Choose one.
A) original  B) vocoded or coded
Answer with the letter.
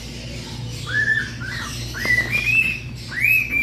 A